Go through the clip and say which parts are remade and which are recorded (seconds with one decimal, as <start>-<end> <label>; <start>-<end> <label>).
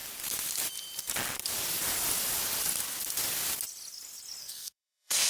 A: 0.0-4.4 recorded; 4.4-5.3 remade